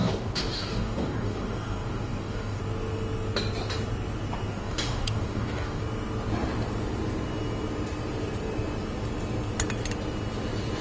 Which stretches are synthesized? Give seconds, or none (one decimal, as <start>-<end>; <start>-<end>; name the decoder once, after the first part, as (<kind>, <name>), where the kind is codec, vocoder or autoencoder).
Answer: 0.0-2.6 (codec, DAC); 4.5-5.8